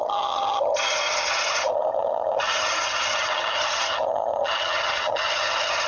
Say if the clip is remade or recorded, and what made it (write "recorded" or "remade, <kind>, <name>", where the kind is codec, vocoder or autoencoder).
remade, vocoder, HiFi-GAN